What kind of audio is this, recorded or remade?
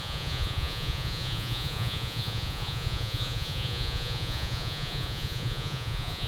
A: remade